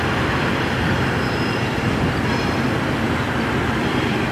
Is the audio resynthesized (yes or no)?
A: yes